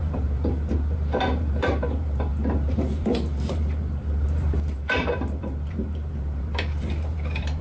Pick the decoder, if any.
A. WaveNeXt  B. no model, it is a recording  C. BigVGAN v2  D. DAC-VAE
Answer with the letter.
C